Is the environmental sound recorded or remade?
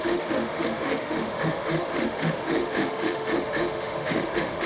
remade